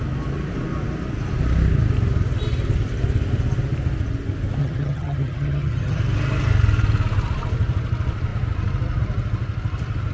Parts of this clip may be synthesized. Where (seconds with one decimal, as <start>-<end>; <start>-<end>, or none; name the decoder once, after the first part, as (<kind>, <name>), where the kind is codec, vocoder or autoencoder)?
4.6-6.0 (vocoder, HiFi-GAN)